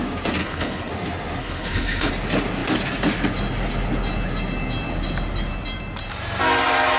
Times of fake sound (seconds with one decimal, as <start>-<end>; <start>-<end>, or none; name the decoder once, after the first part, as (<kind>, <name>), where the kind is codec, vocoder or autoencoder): 0.4-0.9 (codec, HILCodec); 1.4-2.1

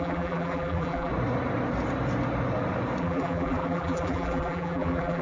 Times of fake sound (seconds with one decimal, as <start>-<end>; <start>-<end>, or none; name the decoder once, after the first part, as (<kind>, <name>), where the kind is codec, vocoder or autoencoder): 0.0-1.1 (vocoder, BigVGAN v2); 3.0-5.2

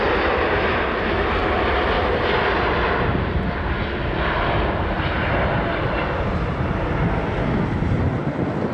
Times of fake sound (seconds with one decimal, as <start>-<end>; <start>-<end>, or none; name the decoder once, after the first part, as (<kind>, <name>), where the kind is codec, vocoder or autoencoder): none